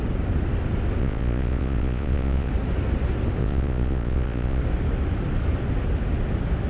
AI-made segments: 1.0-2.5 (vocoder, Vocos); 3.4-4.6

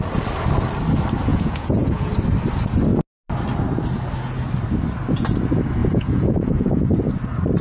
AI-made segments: 1.3-2.1 (vocoder, Vocos); 5.8-6.8

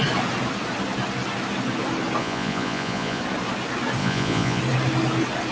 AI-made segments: 2.2-3.2 (vocoder, Vocos); 4.0-4.6

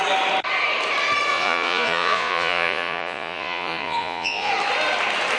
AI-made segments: 1.3-4.5 (vocoder, Vocos)

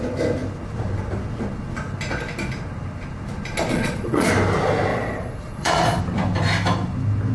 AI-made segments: 3.7-4.3 (vocoder, Vocos); 4.9-6.0

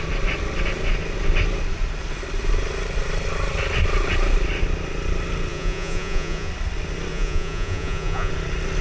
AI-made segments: 5.5-6.5 (vocoder, Vocos); 7.1-8.3